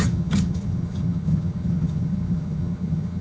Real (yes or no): no